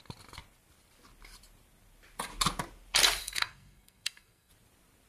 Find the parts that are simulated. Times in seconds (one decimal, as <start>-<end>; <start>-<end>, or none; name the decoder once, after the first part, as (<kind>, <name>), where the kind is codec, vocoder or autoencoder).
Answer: 3.2-4.5 (codec, SNAC)